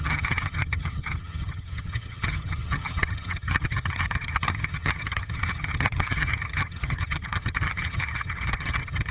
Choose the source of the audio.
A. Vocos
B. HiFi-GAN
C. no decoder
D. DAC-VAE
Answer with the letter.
B